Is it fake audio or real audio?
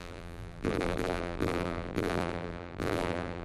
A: fake